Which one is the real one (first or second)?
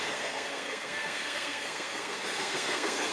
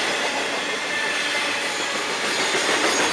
second